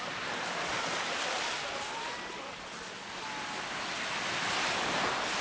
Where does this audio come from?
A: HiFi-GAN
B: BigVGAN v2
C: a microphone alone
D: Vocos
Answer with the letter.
C